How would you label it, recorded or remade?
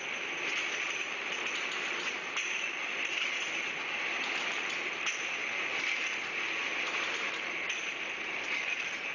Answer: recorded